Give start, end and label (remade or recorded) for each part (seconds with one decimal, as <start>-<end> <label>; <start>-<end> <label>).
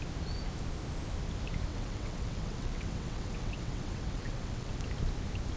0.0-1.7 recorded; 1.7-4.7 remade; 4.7-5.6 recorded